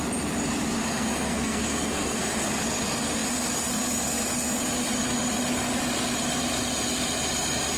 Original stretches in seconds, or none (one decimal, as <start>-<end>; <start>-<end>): 0.0-0.8; 2.5-7.8